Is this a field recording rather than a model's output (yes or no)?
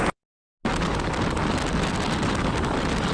yes